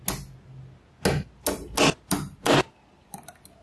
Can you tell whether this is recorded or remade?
recorded